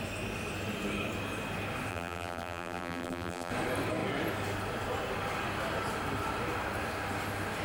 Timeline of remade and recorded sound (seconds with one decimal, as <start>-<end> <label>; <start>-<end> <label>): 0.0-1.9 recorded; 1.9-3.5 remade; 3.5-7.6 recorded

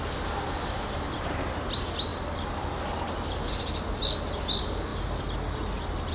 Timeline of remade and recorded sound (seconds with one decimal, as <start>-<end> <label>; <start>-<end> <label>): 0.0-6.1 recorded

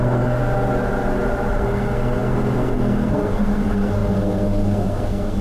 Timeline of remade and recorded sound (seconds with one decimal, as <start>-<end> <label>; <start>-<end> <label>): 0.0-0.4 remade; 0.4-1.5 recorded; 1.5-5.4 remade

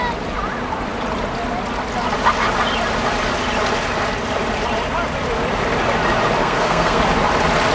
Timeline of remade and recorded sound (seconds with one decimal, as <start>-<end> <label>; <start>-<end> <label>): 0.0-6.4 recorded; 6.4-7.0 remade; 7.0-7.7 recorded

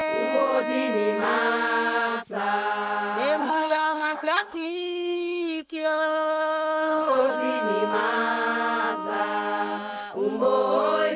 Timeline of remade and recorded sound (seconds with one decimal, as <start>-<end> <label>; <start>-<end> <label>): 0.0-3.4 recorded; 3.4-7.3 remade; 7.3-11.2 recorded

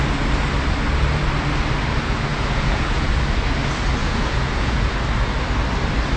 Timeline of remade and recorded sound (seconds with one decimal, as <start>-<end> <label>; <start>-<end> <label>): 0.0-2.3 recorded; 2.3-3.1 remade; 3.1-4.0 recorded; 4.0-4.9 remade; 4.9-6.2 recorded